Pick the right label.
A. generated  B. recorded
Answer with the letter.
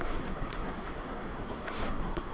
A